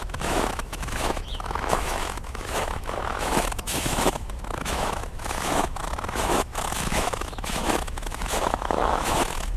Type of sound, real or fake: fake